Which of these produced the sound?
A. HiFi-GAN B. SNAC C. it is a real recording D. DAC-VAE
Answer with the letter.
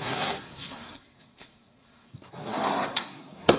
B